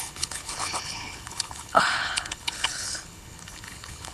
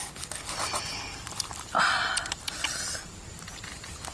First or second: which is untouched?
second